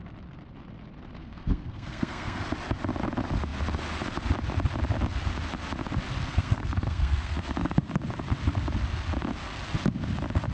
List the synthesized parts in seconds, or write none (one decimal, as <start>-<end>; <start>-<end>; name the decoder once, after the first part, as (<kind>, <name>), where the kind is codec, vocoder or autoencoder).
1.2-2.4 (codec, SNAC); 6.3-7.9